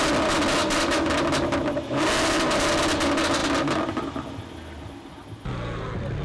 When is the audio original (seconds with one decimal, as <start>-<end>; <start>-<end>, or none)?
0.0-6.2